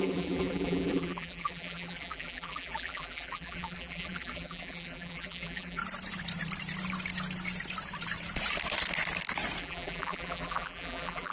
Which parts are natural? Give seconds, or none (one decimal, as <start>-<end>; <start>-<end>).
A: 5.8-9.6